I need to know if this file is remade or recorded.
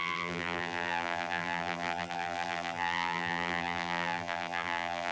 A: remade